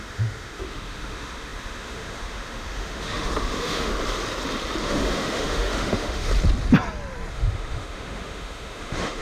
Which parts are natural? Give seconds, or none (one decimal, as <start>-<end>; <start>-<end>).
3.9-4.8; 6.3-7.3